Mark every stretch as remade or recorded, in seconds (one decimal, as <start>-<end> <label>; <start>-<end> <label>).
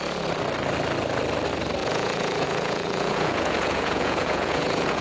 0.0-1.8 recorded; 1.8-5.0 remade